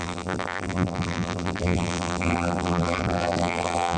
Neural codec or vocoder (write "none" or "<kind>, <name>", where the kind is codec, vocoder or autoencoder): vocoder, BigVGAN v2